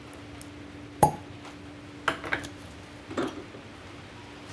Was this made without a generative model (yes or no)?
yes